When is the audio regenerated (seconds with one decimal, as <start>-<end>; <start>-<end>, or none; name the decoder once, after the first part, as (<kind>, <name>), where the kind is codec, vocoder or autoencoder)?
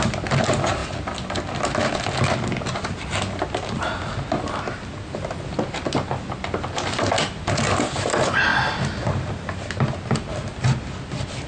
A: none